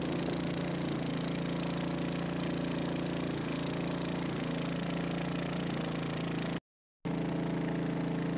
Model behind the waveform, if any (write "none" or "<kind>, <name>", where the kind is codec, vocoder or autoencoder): none